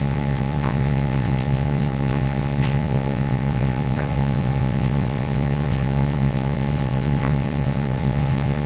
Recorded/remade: remade